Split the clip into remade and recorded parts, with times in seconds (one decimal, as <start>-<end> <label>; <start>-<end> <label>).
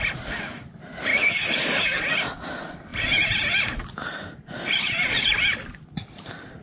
0.0-1.1 recorded; 1.1-2.0 remade; 2.0-6.6 recorded